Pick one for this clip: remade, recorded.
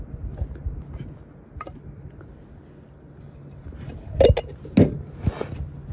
recorded